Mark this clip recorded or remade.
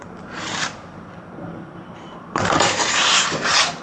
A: remade